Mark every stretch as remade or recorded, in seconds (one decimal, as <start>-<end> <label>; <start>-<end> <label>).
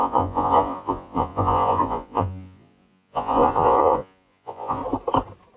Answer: 0.0-4.8 remade; 4.8-5.6 recorded